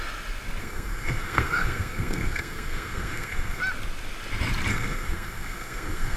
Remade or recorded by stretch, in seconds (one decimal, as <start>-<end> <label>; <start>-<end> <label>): 0.0-0.6 recorded; 0.6-3.6 remade; 3.6-4.7 recorded; 4.7-6.2 remade